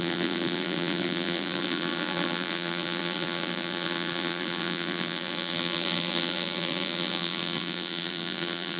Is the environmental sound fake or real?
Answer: fake